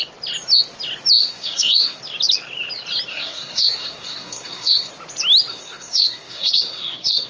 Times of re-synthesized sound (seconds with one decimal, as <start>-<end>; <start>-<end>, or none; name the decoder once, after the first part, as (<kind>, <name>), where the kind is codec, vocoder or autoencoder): 1.2-2.0 (codec, SNAC); 3.1-4.9; 5.5-7.3